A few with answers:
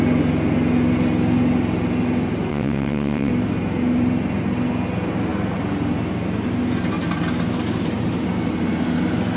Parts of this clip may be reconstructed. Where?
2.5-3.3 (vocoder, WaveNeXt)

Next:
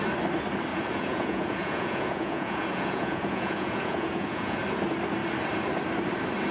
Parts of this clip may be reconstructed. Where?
0.7-4.6 (vocoder, Vocos)

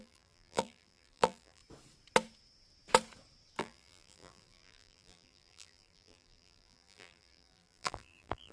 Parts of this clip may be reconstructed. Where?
0.0-1.6 (vocoder, BigVGAN v2); 3.6-8.5

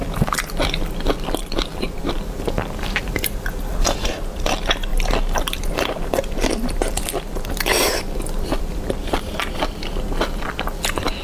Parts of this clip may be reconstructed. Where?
4.9-9.5 (vocoder, BigVGAN v2)

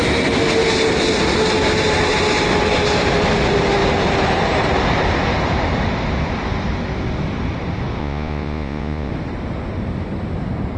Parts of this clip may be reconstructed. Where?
8.0-9.1 (vocoder, Vocos)

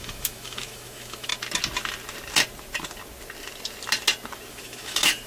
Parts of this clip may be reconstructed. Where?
0.0-1.3 (autoencoder, DAC-VAE); 4.5-5.3

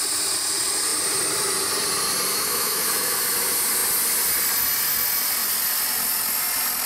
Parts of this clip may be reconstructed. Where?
2.3-3.2 (autoencoder, DAC-VAE)